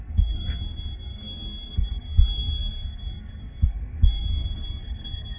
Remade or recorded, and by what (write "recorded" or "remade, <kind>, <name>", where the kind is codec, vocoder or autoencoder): remade, codec, SNAC